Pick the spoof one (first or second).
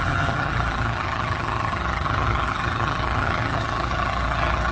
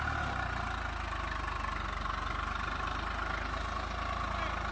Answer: first